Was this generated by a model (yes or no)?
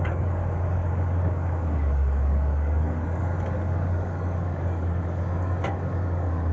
yes